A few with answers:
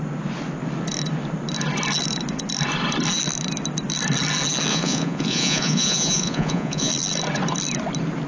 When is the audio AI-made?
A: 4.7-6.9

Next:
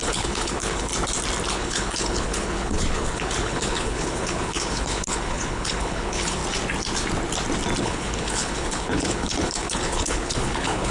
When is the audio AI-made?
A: 0.0-0.9; 1.5-6.4; 7.8-10.9

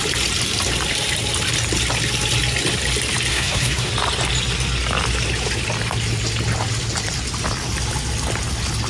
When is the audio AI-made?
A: 3.3-3.9

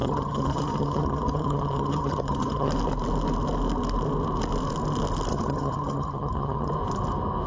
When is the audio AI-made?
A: 0.0-2.7; 5.3-6.7

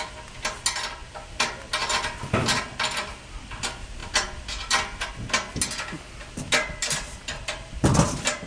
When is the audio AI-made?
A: none

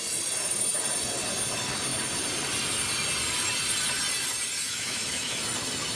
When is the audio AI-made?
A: 4.6-5.4

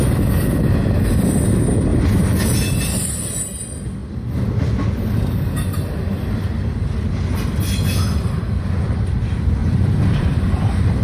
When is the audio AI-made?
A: 9.6-11.0

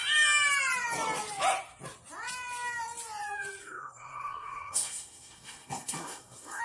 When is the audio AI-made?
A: 3.6-6.6